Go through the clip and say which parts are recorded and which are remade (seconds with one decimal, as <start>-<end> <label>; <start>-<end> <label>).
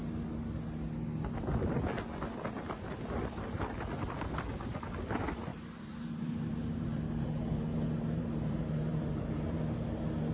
0.0-5.5 recorded; 5.5-9.6 remade; 9.6-10.3 recorded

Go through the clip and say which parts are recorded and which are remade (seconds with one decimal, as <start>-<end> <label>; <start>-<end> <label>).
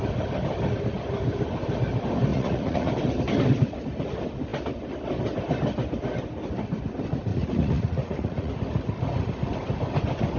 0.0-2.3 recorded; 2.3-2.9 remade; 2.9-7.3 recorded; 7.3-8.5 remade; 8.5-10.4 recorded